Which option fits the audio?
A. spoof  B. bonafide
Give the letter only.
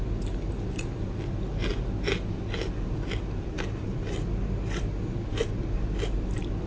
B